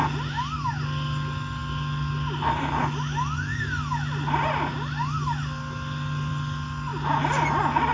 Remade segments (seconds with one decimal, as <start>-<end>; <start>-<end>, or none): none